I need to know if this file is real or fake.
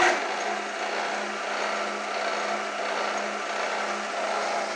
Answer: real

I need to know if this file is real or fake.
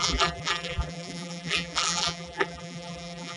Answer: fake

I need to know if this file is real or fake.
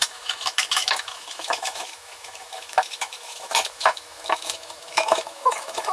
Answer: fake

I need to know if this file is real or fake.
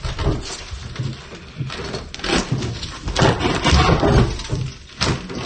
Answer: real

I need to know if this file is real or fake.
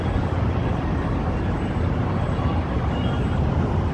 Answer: fake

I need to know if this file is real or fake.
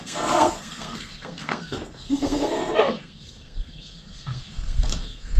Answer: fake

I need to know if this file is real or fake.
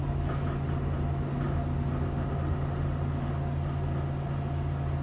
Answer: real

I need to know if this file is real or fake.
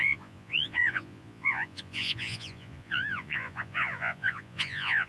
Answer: fake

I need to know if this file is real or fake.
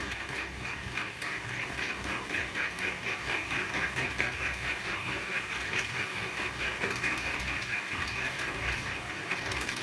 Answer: fake